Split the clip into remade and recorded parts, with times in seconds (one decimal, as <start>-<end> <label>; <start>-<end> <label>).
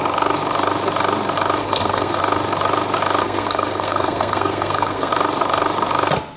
0.0-1.6 recorded; 1.6-2.2 remade; 2.2-3.2 recorded; 3.2-5.1 remade; 5.1-6.4 recorded